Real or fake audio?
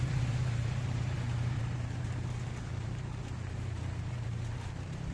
fake